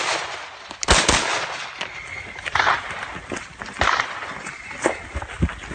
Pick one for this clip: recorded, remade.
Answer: recorded